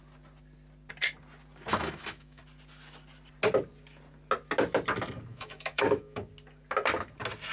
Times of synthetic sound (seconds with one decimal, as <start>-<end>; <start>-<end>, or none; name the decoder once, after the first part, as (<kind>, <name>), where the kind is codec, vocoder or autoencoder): 1.7-2.4 (autoencoder, DAC-VAE); 5.3-6.3